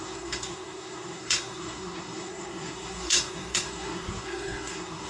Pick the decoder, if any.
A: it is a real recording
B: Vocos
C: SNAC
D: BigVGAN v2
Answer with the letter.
C